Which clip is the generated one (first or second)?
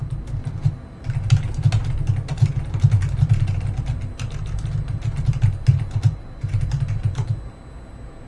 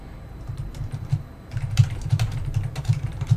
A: second